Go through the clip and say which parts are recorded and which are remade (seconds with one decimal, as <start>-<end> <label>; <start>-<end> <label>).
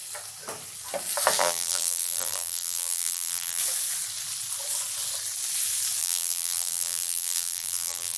0.0-1.4 recorded; 1.4-3.6 remade; 3.6-6.0 recorded; 6.0-8.2 remade